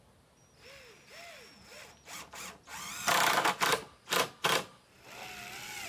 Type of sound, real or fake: real